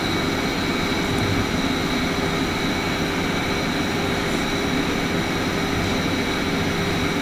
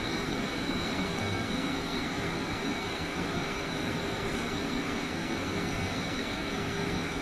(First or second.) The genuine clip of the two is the first